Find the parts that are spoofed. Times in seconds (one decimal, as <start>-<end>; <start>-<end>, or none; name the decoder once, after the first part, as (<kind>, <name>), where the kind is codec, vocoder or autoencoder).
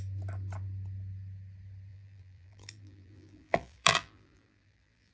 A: 1.9-5.1 (vocoder, BigVGAN v2)